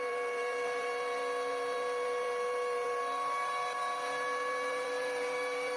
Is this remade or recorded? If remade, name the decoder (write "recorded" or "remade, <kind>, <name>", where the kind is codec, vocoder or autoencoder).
remade, vocoder, BigVGAN v2